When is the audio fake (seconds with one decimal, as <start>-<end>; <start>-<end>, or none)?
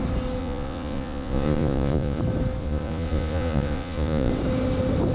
0.4-2.2; 2.6-4.3